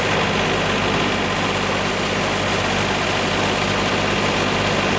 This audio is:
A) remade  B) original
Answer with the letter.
B